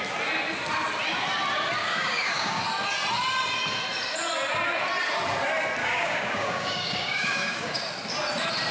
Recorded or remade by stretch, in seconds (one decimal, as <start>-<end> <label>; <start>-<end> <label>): 0.0-1.8 recorded; 1.8-2.6 remade; 2.6-5.8 recorded; 5.8-7.8 remade; 7.8-8.7 recorded